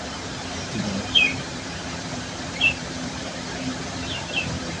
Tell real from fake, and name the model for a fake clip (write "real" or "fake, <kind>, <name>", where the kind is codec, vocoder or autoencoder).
fake, vocoder, BigVGAN v2